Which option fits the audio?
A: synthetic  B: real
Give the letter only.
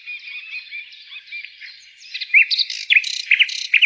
B